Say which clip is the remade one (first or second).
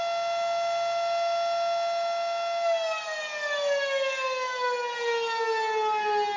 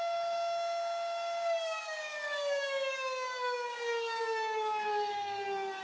second